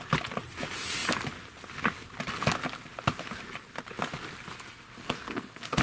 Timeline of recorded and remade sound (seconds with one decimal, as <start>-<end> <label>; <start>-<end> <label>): 0.0-5.0 recorded; 5.0-5.8 remade